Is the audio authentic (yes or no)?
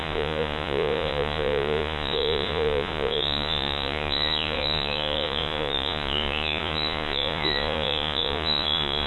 no